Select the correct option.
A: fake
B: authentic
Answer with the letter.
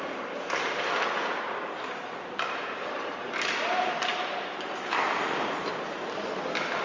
B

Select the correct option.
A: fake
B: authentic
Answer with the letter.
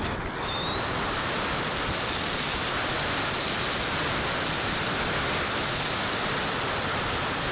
B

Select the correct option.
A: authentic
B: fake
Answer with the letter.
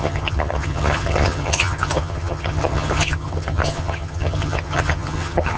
B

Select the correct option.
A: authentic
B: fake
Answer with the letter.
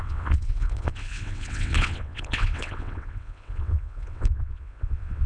B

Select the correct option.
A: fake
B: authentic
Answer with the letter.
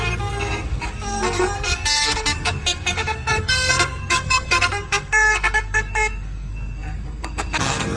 A